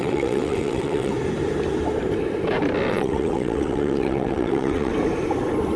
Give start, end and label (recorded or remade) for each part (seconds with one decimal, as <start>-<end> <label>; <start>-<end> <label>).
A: 0.0-1.1 remade; 1.1-2.9 recorded; 2.9-4.9 remade; 4.9-5.8 recorded